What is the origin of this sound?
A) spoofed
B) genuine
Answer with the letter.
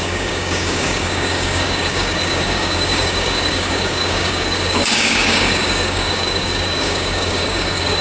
A